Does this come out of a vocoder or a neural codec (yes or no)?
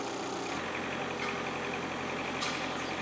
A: no